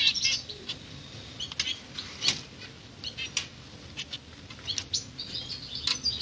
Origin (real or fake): real